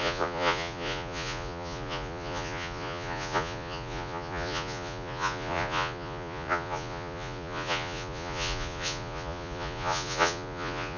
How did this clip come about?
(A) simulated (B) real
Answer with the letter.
A